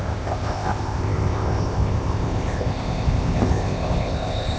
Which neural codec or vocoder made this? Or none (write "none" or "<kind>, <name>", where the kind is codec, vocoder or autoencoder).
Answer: codec, ZipCodec